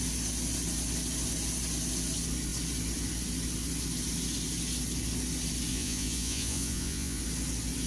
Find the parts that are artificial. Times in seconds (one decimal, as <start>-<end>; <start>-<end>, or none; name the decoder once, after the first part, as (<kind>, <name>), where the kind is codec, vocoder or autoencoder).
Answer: 5.7-7.2 (vocoder, Vocos)